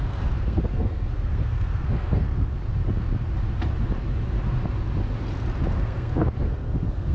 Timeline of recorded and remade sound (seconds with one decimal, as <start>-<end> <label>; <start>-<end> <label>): 0.0-2.6 remade; 2.6-5.8 recorded; 5.8-7.1 remade